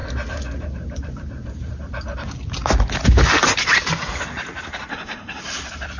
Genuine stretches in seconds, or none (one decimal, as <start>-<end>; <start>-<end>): 0.0-4.9; 5.4-6.0